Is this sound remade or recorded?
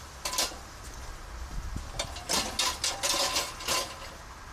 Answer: recorded